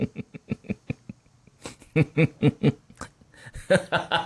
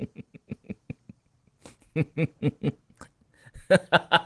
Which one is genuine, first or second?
first